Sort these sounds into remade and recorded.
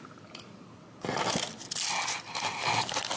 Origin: recorded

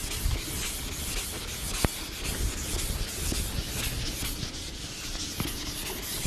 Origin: recorded